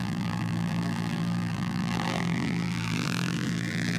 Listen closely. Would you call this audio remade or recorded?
remade